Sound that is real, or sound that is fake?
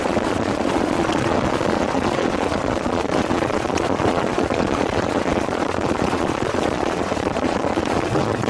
fake